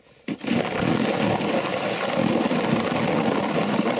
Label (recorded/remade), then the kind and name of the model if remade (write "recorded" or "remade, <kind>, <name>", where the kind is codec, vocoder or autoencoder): recorded